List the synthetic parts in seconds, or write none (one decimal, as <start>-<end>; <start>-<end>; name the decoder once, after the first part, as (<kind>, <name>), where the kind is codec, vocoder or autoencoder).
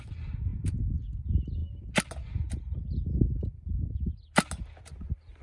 none